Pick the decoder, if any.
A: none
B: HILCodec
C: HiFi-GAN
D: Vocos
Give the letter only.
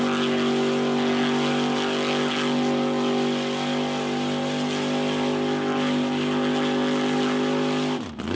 A